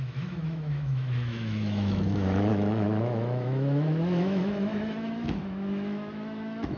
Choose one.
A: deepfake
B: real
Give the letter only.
A